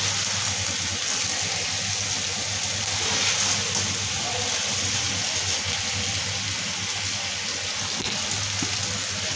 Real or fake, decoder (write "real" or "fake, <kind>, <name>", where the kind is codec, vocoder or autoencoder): real